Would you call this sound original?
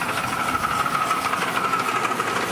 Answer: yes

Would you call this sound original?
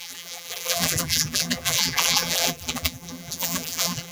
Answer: no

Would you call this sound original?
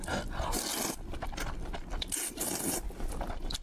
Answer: no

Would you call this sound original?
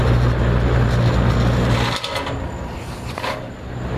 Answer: yes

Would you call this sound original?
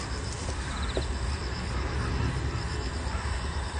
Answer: yes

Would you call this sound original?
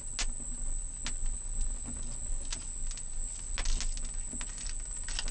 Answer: yes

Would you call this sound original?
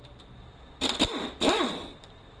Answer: no